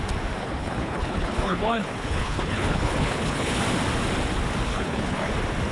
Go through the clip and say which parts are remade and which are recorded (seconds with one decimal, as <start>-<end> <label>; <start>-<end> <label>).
0.0-0.4 recorded; 0.4-3.6 remade; 3.6-4.7 recorded; 4.7-5.3 remade; 5.3-5.7 recorded